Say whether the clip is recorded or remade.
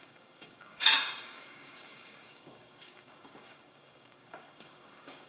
remade